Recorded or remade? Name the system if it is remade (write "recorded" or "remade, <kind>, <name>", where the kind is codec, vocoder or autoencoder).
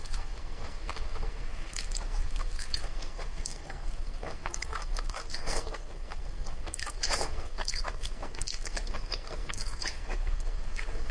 remade, codec, SNAC